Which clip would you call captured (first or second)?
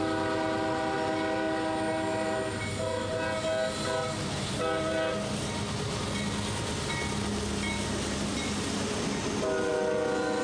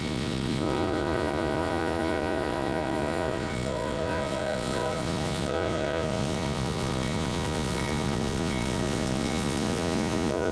first